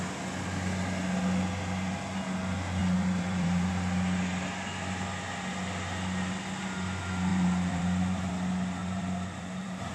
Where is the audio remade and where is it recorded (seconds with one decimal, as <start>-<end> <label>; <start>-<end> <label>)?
0.0-2.8 recorded; 2.8-3.7 remade; 3.7-7.3 recorded; 7.3-8.3 remade; 8.3-8.8 recorded; 8.8-9.9 remade